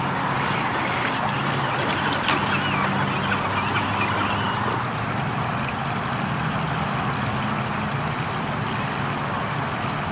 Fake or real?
real